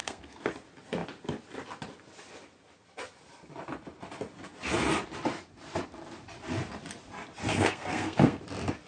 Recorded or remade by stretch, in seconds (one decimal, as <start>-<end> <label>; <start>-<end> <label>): 0.0-0.5 remade; 0.5-7.5 recorded; 7.5-8.4 remade; 8.4-8.9 recorded